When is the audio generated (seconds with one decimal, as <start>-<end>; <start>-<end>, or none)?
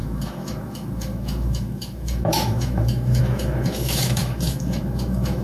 0.0-5.4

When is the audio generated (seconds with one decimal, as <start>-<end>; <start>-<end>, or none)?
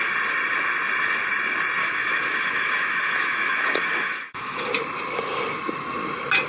1.8-4.7